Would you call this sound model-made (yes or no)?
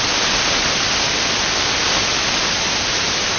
no